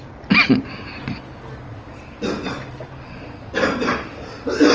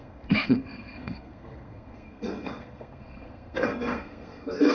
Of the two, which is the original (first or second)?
first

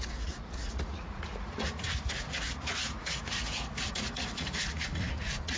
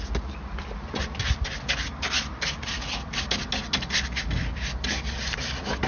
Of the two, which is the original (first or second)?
second